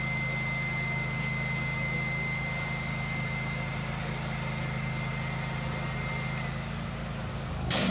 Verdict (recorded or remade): recorded